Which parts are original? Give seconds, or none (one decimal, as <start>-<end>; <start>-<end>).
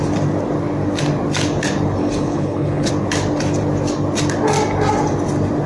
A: 0.0-2.0; 2.9-5.7